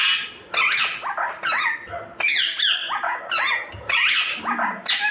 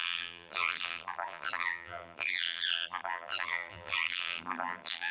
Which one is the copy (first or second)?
second